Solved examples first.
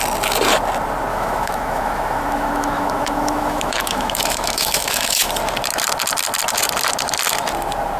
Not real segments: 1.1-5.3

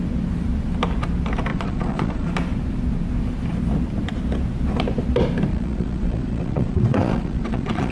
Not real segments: 1.5-2.3; 5.5-7.9